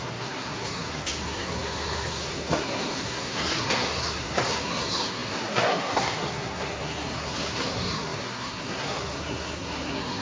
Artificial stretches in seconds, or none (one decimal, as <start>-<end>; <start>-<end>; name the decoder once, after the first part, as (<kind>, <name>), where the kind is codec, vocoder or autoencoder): 0.0-10.2 (codec, SNAC)